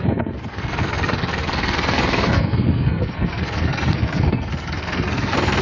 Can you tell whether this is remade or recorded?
remade